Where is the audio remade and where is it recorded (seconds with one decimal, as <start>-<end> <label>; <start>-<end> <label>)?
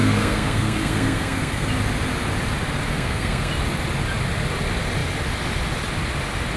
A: 0.0-1.7 remade; 1.7-2.9 recorded; 2.9-3.5 remade; 3.5-6.6 recorded